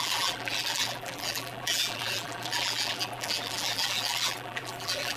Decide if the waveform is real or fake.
fake